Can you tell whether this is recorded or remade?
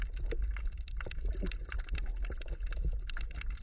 recorded